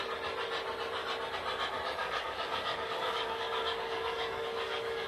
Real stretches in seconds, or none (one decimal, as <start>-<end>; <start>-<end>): 0.0-2.0